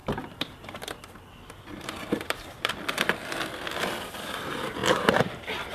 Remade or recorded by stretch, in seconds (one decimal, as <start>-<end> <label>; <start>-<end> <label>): 0.0-3.4 remade; 3.4-4.8 recorded; 4.8-5.7 remade